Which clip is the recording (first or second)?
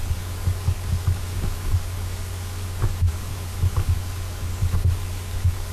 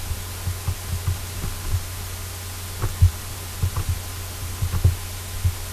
second